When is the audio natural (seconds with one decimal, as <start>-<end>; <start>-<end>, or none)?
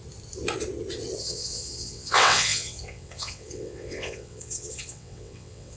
0.0-1.2